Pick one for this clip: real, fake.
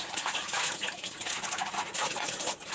fake